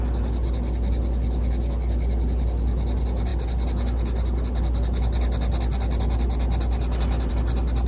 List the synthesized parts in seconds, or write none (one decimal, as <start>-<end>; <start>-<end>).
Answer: none